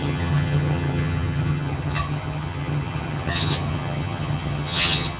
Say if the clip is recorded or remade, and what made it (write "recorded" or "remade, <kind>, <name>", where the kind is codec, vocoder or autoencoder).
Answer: remade, vocoder, HiFi-GAN